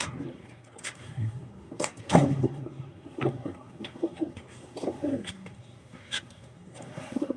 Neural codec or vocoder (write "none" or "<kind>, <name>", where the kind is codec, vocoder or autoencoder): codec, SNAC